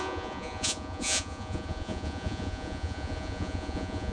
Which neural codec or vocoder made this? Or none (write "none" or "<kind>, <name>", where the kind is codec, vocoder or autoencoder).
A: vocoder, Vocos